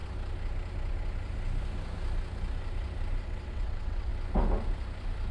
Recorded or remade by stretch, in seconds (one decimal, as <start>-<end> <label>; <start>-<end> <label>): 0.0-3.2 recorded; 3.2-4.1 remade; 4.1-5.3 recorded